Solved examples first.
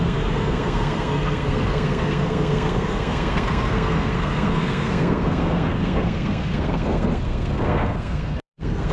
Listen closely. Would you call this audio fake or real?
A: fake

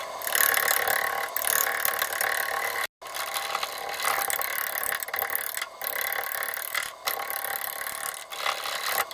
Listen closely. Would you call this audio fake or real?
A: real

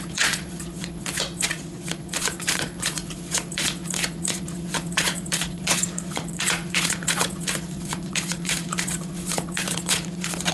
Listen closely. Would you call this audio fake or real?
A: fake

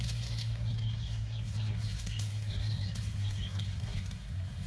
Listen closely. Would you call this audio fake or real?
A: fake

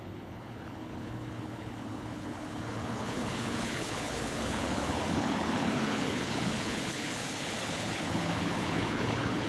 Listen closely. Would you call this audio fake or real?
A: fake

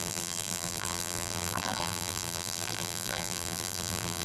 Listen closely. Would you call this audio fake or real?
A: fake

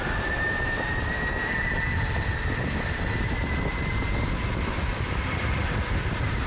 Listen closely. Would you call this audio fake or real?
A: real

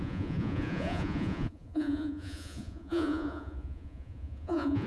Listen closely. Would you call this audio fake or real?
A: fake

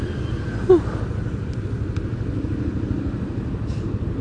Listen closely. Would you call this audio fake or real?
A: real